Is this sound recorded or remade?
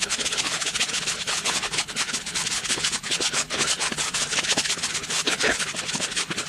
remade